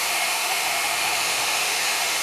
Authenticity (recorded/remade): remade